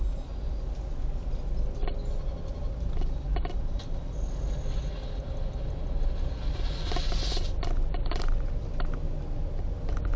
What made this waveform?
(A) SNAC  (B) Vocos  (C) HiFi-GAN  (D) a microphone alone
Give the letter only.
D